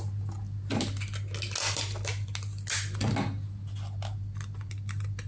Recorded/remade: recorded